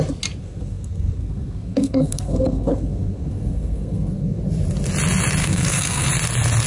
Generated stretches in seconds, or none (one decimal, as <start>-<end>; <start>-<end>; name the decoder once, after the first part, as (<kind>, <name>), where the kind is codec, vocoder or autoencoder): 0.4-4.4 (codec, SNAC); 5.4-6.1